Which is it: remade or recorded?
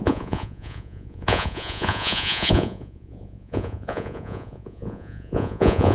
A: remade